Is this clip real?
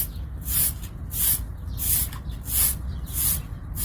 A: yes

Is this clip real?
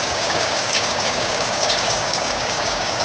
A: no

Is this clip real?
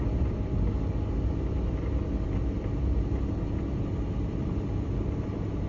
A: yes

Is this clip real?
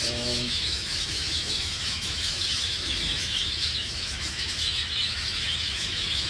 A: no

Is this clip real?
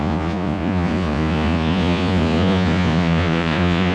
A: no